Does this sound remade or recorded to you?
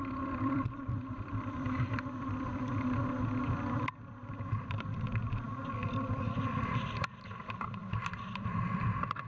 remade